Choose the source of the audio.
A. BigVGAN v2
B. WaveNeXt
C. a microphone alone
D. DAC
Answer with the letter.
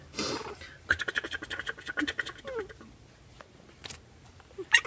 C